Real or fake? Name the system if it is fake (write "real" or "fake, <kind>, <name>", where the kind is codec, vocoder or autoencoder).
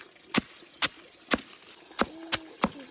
real